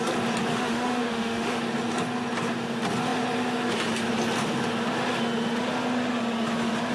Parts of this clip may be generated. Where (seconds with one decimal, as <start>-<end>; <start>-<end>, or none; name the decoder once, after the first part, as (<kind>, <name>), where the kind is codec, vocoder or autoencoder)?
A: 0.5-1.6 (autoencoder, DAC-VAE)